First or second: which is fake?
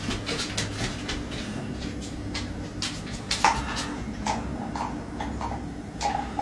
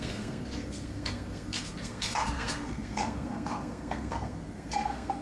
second